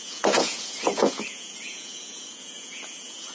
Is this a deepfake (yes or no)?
yes